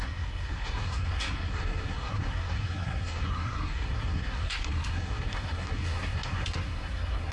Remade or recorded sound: remade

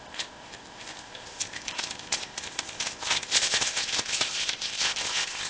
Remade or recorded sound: remade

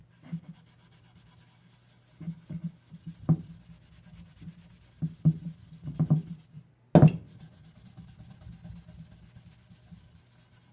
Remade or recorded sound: recorded